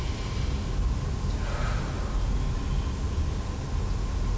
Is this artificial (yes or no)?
no